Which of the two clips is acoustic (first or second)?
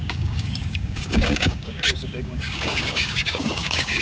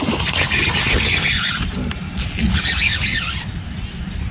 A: second